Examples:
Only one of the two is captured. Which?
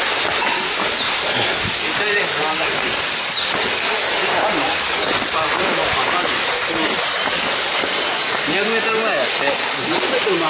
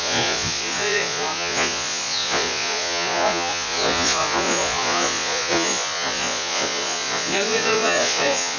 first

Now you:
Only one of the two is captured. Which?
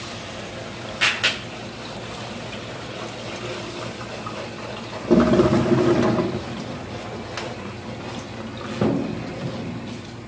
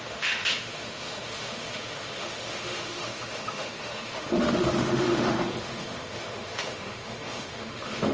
first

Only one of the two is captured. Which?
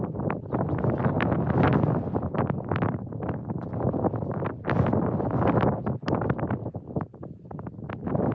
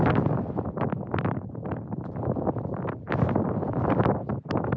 first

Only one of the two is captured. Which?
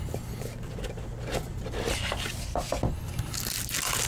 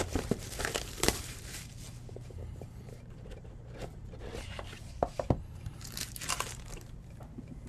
first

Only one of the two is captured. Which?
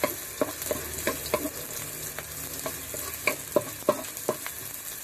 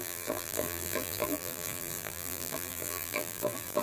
first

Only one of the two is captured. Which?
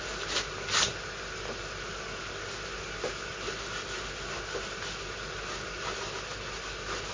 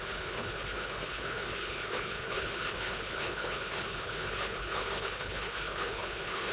first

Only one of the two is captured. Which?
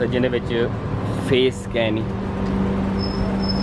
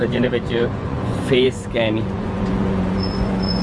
first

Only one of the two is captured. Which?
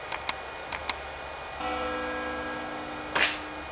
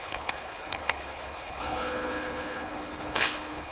first